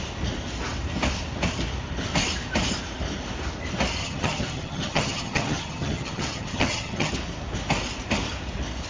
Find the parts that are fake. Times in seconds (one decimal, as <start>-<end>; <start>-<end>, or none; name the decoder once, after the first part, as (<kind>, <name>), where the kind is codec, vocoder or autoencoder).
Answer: 4.0-7.1 (vocoder, HiFi-GAN)